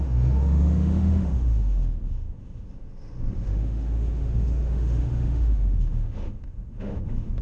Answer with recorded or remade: remade